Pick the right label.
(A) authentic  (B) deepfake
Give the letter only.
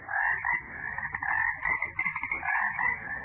A